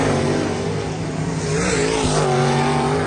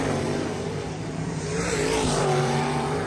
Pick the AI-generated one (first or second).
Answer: second